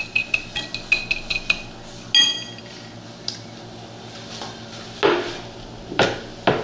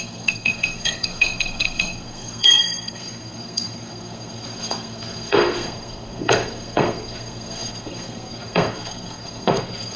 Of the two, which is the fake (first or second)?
second